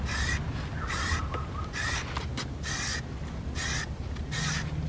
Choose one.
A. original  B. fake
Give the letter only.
A